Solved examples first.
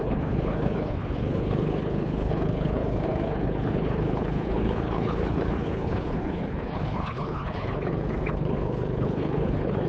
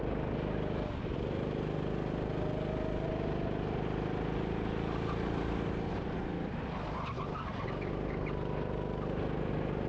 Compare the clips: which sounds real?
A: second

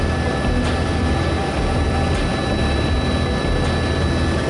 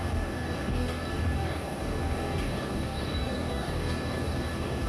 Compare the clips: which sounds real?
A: first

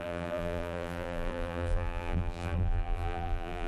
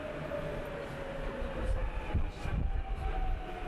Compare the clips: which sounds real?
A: second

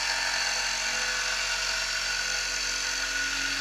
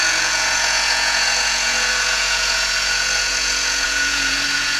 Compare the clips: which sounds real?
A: first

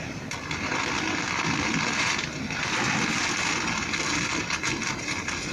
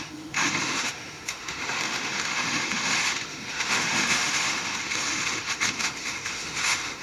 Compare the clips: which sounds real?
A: first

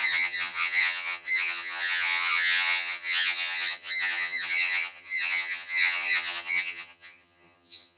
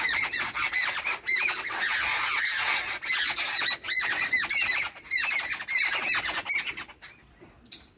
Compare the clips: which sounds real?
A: second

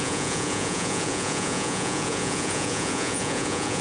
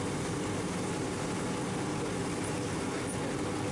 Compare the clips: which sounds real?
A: second